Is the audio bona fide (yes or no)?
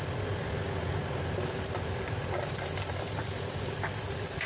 yes